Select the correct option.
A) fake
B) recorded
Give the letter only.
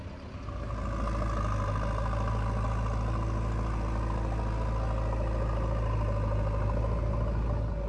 B